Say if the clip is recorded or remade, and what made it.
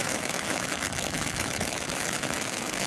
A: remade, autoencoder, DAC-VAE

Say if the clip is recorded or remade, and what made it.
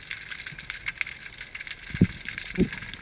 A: recorded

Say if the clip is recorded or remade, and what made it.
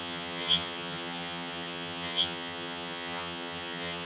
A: remade, vocoder, HiFi-GAN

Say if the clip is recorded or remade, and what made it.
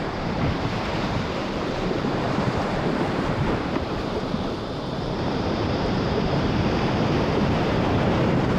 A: remade, vocoder, BigVGAN v2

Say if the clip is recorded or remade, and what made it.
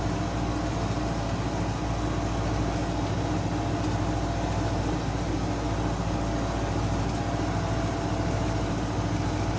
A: recorded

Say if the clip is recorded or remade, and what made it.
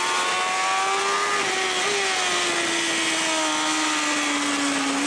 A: recorded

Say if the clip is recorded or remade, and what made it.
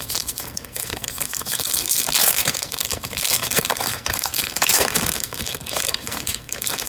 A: remade, codec, SNAC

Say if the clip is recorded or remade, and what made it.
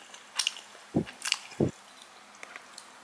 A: recorded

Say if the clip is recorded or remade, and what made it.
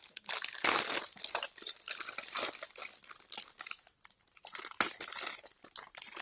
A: recorded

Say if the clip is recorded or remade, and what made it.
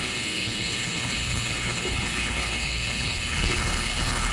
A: remade, codec, HILCodec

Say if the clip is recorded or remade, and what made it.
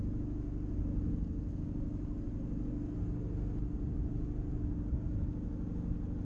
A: recorded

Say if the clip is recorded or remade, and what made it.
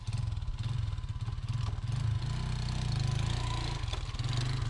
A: recorded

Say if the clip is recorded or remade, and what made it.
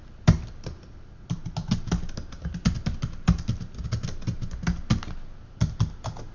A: recorded